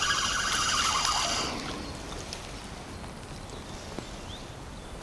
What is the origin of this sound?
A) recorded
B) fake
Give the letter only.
A